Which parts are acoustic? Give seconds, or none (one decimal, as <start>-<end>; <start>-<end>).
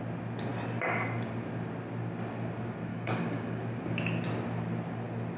0.0-2.9; 3.6-5.4